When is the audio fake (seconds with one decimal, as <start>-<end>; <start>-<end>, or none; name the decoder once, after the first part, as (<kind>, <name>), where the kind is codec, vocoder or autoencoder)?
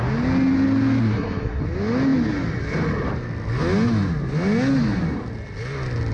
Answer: 1.0-1.6 (codec, SNAC)